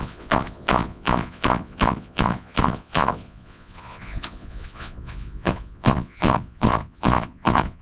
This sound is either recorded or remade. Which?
remade